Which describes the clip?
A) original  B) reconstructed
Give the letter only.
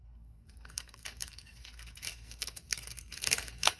B